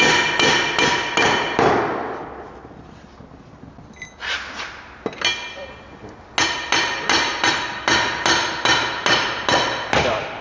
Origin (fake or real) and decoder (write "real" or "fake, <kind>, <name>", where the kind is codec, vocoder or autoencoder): real